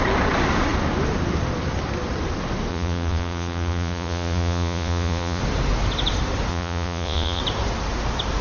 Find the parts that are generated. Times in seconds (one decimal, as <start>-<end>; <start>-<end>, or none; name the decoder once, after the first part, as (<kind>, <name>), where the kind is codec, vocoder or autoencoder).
2.7-5.4 (vocoder, Vocos); 6.5-7.4